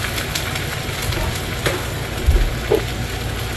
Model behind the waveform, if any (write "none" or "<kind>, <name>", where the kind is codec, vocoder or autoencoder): none